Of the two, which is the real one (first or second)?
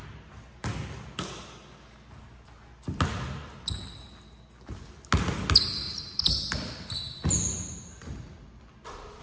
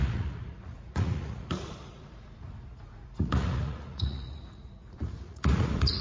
first